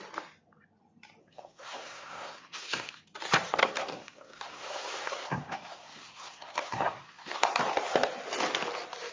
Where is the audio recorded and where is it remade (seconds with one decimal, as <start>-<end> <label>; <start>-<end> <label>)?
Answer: 0.0-1.2 recorded; 1.2-3.0 remade; 3.0-3.6 recorded; 3.6-7.6 remade; 7.6-9.1 recorded